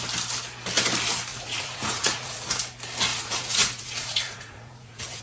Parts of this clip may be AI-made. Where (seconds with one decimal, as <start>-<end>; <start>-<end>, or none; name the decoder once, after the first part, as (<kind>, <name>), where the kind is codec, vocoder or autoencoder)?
1.3-2.5 (vocoder, Vocos); 3.1-5.2